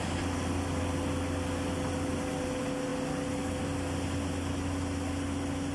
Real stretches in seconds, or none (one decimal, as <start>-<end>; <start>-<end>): 0.0-5.7

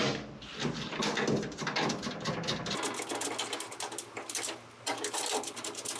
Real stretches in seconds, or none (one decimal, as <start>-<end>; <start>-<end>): 0.0-6.0

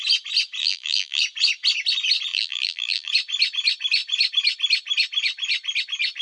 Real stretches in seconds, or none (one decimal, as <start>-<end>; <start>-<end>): 0.0-0.6; 1.2-2.3; 3.1-6.2

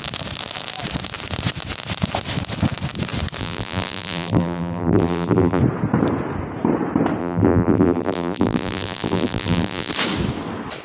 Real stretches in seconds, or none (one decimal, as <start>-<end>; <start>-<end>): 0.0-3.4; 5.6-7.2; 9.9-10.8

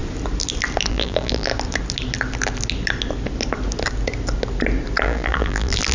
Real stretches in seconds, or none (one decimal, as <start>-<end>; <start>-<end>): 0.0-0.9; 1.5-5.0